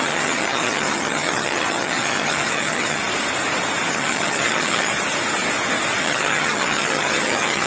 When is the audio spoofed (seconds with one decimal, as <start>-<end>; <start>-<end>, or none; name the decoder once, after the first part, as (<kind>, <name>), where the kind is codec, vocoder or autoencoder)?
0.0-3.0 (vocoder, HiFi-GAN); 3.9-4.9; 6.0-7.7

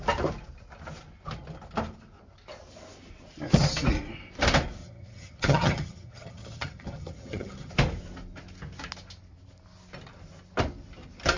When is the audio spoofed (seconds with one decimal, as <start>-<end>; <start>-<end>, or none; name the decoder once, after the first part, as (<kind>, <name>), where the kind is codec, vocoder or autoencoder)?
4.8-7.7 (vocoder, HiFi-GAN)

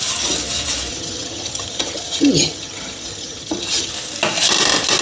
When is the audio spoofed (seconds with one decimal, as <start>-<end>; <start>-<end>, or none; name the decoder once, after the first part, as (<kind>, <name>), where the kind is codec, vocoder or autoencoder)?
0.9-3.9 (vocoder, HiFi-GAN)

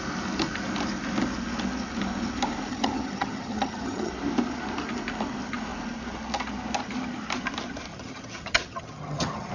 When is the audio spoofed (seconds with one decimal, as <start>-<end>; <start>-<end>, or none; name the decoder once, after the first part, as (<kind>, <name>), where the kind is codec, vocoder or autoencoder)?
2.7-4.1 (vocoder, HiFi-GAN); 7.9-9.5

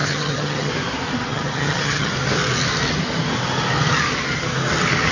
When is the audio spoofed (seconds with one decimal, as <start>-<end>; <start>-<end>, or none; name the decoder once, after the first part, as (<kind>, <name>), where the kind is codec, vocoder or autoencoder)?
0.0-0.7 (vocoder, HiFi-GAN); 1.3-2.1